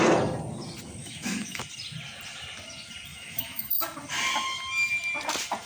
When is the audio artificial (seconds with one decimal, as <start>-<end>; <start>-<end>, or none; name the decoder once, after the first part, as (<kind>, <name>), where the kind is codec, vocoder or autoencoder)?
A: 1.0-1.6 (autoencoder, DAC-VAE); 3.1-3.8